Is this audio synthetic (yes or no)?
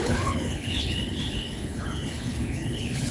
yes